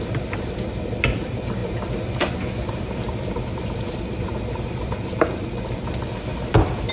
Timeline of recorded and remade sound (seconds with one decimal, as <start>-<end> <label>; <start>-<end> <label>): 0.0-6.9 recorded